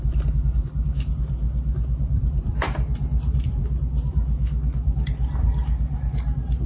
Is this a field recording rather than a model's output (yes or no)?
yes